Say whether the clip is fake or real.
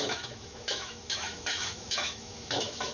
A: fake